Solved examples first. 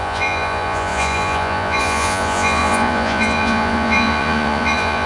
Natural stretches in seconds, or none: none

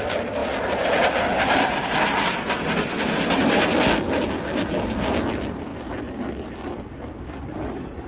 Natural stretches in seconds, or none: 0.0-8.1

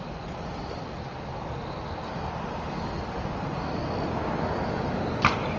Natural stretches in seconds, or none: 0.0-5.6